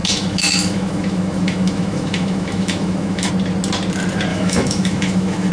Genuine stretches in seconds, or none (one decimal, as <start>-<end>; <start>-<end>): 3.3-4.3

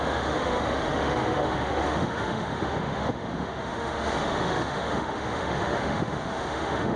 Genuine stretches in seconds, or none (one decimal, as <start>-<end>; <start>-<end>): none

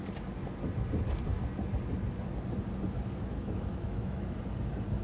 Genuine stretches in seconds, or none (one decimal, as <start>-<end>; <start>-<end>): 0.0-3.2; 4.4-5.0

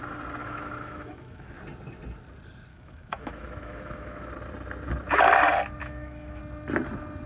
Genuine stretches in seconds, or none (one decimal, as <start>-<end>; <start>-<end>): 0.0-0.4; 1.5-2.7; 4.3-5.8; 6.4-7.3